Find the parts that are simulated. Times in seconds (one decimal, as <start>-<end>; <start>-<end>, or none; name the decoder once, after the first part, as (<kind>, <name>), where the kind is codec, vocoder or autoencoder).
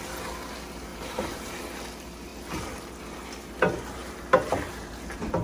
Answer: 0.9-1.6 (vocoder, BigVGAN v2); 4.0-4.7